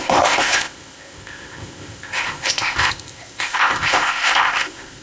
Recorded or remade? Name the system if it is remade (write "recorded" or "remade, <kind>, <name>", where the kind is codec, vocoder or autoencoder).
remade, codec, ZipCodec